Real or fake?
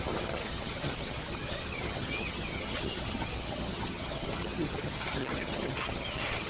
fake